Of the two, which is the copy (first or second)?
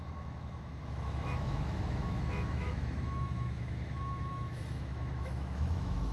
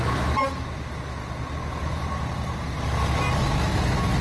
first